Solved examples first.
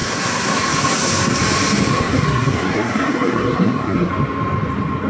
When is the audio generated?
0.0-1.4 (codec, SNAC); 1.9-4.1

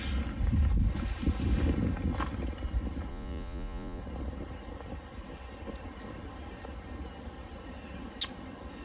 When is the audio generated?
3.1-4.0 (vocoder, Vocos)

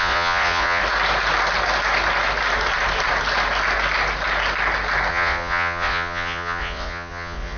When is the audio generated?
0.0-0.8 (vocoder, Vocos); 5.1-7.6

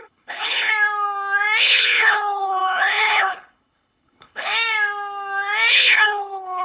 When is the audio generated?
0.0-0.7 (codec, HILCodec); 1.6-4.5; 5.7-6.6

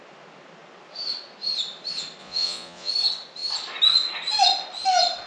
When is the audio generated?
2.2-2.9 (vocoder, Vocos)